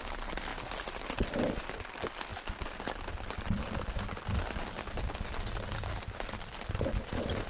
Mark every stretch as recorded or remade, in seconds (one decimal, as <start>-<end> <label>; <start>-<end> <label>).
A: 0.0-7.5 recorded